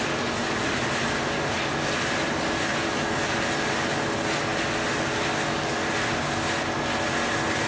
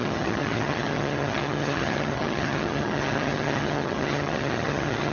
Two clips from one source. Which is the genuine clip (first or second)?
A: first